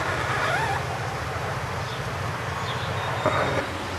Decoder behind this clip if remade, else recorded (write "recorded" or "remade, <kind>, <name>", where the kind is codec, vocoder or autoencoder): recorded